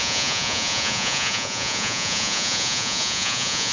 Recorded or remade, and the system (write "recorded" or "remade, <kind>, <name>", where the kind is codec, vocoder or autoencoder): remade, vocoder, Vocos